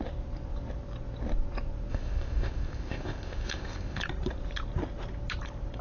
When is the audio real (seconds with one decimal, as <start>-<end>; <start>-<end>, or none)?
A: 0.0-1.9; 4.0-5.8